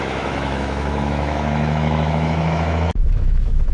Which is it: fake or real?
fake